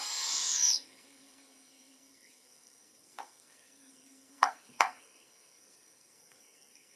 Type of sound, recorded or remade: remade